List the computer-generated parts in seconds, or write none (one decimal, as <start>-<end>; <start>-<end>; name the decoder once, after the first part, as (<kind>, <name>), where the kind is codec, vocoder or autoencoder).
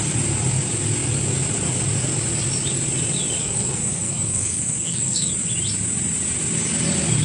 3.4-5.3 (codec, SNAC)